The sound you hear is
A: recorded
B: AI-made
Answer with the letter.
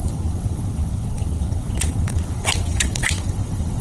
B